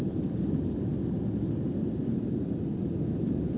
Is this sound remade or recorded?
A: recorded